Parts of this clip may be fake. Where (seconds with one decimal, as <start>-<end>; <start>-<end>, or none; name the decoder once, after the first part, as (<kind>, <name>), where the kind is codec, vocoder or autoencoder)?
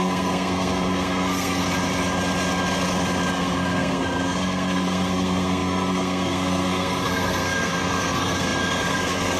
0.0-1.6 (codec, SNAC); 3.3-9.4